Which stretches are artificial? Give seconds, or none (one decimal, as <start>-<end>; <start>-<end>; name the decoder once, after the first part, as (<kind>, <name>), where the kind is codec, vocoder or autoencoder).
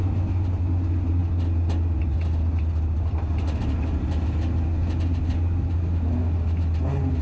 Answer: none